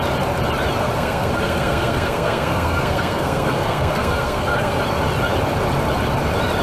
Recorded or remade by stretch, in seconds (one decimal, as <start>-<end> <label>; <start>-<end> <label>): 0.0-0.8 recorded; 0.8-4.8 remade; 4.8-6.6 recorded